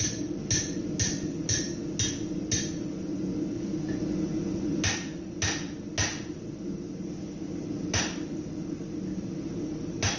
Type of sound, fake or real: real